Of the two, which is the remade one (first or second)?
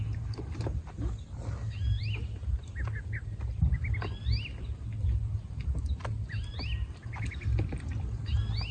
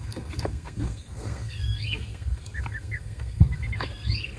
second